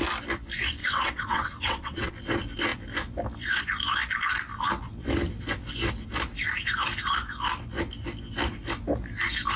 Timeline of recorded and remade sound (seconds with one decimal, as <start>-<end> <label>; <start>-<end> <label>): 0.0-0.8 recorded; 0.8-2.1 remade; 2.1-9.6 recorded

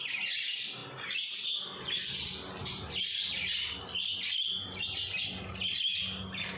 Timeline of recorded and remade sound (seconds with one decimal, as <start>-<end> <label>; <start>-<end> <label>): 0.0-6.6 recorded

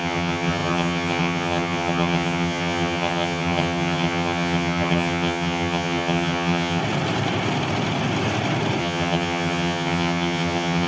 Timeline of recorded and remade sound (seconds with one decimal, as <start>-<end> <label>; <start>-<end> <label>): 0.0-6.8 remade; 6.8-8.8 recorded; 8.8-10.9 remade